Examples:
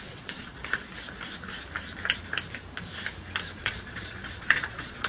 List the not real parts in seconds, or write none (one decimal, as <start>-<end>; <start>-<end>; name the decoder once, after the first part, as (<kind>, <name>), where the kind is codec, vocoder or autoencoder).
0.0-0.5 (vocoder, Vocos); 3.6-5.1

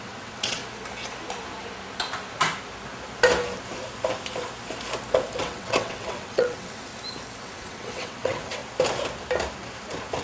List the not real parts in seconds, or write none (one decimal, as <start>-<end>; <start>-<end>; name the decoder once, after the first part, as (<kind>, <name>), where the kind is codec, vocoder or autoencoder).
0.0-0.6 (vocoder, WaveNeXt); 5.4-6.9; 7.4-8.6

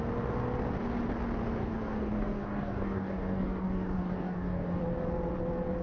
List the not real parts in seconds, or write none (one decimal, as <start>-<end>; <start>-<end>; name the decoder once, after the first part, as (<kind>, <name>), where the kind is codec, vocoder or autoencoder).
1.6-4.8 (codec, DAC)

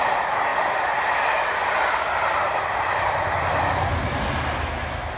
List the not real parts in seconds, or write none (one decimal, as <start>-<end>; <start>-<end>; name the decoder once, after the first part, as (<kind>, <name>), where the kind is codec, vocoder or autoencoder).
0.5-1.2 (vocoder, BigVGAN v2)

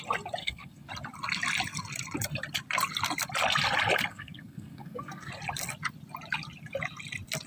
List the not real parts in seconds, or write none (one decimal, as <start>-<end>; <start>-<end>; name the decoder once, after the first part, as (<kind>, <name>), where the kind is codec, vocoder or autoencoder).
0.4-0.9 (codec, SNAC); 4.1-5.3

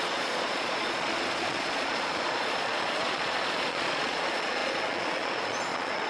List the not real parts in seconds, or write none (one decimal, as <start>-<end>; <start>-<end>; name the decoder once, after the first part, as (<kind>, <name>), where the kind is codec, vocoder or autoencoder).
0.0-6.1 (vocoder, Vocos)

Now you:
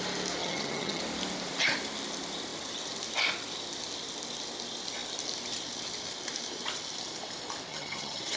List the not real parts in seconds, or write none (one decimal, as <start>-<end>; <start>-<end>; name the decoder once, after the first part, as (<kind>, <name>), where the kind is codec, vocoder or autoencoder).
0.4-1.0 (vocoder, HiFi-GAN); 7.7-8.4

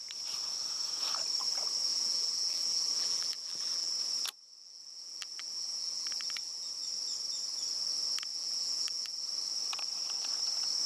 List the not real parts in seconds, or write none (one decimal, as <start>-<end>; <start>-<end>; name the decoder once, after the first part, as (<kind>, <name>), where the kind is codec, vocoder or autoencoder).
1.9-3.9 (vocoder, BigVGAN v2); 4.6-6.7; 8.3-9.2